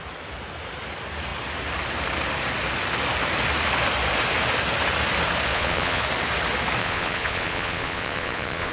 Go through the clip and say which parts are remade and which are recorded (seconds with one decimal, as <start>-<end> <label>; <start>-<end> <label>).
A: 0.0-5.5 recorded; 5.5-6.0 remade; 6.0-6.8 recorded; 6.8-8.7 remade